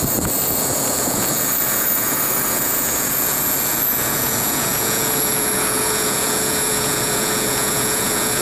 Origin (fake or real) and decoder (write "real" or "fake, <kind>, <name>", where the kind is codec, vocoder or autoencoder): fake, vocoder, Vocos